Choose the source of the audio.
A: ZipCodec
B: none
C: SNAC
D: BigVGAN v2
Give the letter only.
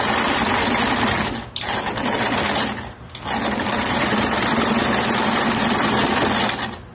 B